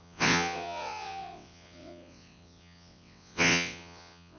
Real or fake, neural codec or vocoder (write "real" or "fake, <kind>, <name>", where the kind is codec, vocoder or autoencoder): fake, vocoder, WaveNeXt